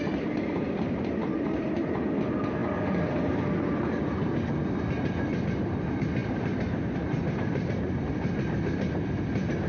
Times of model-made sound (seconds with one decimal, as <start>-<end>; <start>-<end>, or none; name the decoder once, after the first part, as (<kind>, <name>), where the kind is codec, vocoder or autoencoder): none